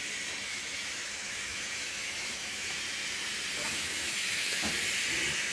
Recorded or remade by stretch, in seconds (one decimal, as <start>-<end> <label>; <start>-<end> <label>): 0.0-0.5 recorded; 0.5-2.7 remade; 2.7-3.6 recorded; 3.6-4.7 remade; 4.7-5.5 recorded